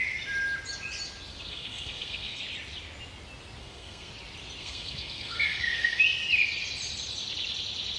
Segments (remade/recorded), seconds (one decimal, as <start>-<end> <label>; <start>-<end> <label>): 0.0-1.3 recorded; 1.3-2.4 remade; 2.4-3.6 recorded; 3.6-4.1 remade; 4.1-4.6 recorded; 4.6-6.0 remade; 6.0-8.0 recorded

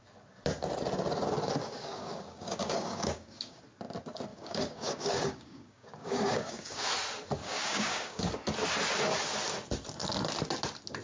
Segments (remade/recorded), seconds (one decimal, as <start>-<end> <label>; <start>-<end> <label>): 0.0-1.6 recorded; 1.6-3.6 remade; 3.6-4.3 recorded; 4.3-6.9 remade; 6.9-7.4 recorded; 7.4-8.2 remade; 8.2-11.0 recorded

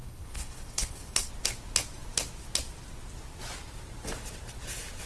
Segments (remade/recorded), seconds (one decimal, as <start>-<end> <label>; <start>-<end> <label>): 0.0-1.3 remade; 1.3-5.1 recorded

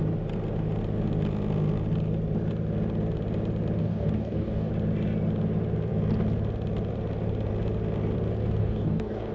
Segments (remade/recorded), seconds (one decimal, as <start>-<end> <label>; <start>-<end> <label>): 0.0-3.8 recorded; 3.8-4.7 remade; 4.7-8.6 recorded; 8.6-9.3 remade

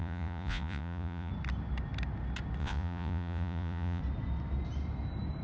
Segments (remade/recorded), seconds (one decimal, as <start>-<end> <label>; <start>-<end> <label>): 0.0-1.3 remade; 1.3-2.6 recorded; 2.6-4.0 remade; 4.0-5.4 recorded

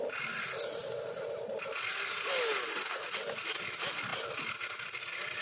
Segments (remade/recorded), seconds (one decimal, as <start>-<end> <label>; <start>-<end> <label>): 0.0-5.4 recorded

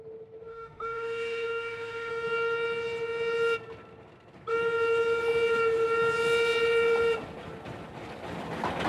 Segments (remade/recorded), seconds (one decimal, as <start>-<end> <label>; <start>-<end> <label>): 0.0-0.5 recorded; 0.5-2.1 remade; 2.1-8.9 recorded

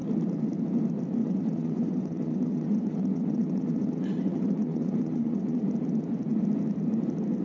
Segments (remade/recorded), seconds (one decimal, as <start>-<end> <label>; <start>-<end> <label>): 0.0-1.2 recorded; 1.2-5.6 remade; 5.6-7.4 recorded